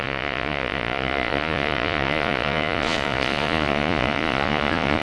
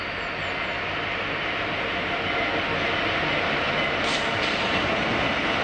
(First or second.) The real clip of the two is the second